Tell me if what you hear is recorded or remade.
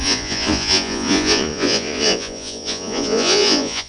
remade